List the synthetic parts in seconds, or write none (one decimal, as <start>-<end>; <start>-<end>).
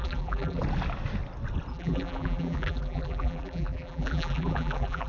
0.0-0.6; 1.7-5.1